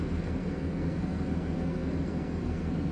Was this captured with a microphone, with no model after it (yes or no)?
no